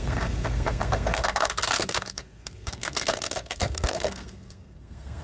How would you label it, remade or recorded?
remade